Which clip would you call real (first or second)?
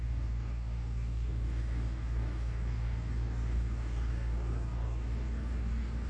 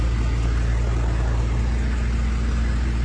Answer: second